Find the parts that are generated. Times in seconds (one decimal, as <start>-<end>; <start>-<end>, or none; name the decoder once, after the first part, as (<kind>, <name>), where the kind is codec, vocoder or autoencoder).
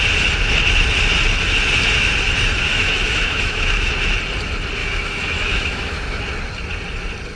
2.7-3.9 (autoencoder, DAC-VAE); 4.8-6.2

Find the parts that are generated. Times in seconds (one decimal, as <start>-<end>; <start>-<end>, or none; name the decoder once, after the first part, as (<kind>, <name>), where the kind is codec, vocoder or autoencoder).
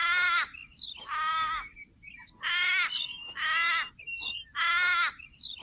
none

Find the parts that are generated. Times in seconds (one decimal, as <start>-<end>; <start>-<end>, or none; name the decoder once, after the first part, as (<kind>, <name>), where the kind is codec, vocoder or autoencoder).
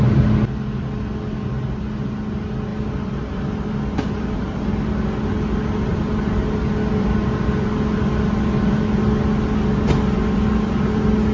none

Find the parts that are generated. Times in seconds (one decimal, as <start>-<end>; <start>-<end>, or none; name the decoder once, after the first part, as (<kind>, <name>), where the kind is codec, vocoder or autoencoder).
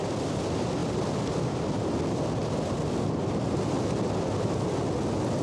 none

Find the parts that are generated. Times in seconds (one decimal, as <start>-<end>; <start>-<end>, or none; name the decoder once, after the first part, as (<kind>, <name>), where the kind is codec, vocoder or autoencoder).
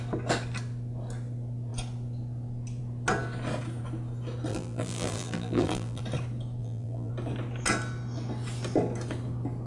4.5-6.0 (vocoder, BigVGAN v2); 6.6-7.1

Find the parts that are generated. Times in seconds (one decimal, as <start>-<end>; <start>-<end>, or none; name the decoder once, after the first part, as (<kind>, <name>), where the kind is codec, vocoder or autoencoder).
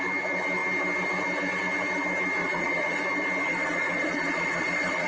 2.4-3.0 (vocoder, Vocos); 3.5-5.1